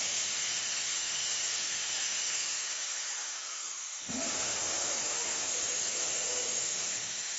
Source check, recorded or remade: remade